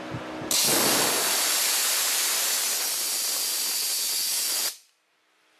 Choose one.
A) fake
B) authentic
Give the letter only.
B